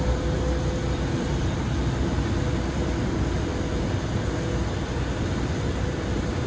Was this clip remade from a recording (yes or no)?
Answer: no